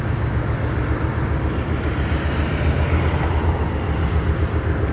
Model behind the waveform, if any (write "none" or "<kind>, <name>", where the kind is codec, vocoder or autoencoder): none